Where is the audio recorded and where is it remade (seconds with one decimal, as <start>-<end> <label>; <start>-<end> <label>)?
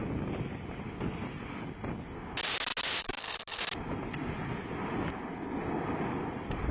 0.0-6.7 recorded